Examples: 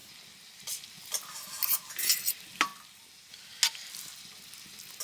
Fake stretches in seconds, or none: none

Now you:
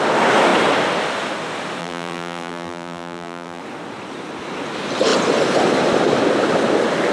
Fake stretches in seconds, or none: 1.8-3.6 (vocoder, BigVGAN v2)